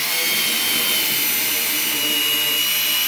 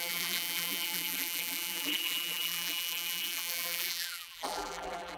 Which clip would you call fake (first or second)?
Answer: second